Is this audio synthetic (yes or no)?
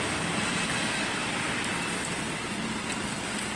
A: no